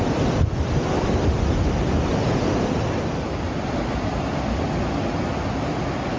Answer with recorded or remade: recorded